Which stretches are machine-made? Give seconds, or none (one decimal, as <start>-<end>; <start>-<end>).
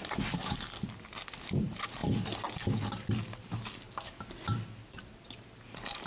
none